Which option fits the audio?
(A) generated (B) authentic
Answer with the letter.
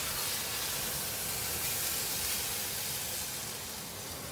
B